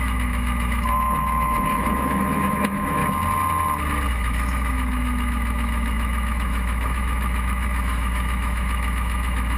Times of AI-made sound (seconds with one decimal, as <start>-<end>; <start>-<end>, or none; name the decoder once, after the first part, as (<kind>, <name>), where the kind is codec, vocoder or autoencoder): 0.0-3.0 (autoencoder, DAC-VAE); 4.1-9.6